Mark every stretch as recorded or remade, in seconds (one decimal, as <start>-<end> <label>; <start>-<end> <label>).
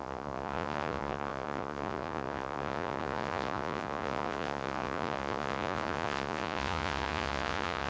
0.0-7.9 remade